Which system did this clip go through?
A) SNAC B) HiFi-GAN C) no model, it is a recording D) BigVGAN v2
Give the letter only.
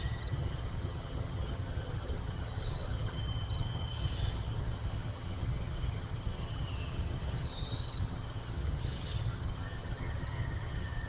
B